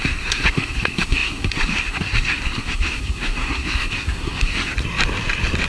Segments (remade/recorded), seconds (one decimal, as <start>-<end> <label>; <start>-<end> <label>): 0.0-4.7 remade; 4.7-5.7 recorded